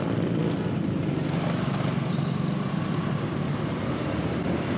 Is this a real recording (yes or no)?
yes